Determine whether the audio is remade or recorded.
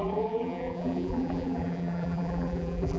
remade